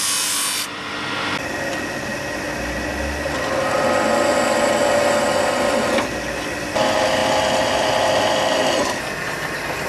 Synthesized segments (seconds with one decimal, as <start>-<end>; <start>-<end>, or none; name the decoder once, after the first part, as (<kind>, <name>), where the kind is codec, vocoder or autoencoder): none